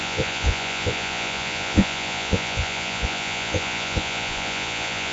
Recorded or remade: remade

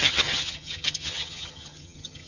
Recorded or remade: remade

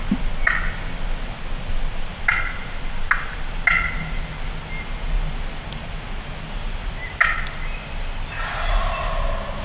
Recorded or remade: recorded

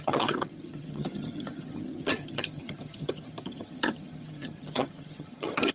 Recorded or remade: remade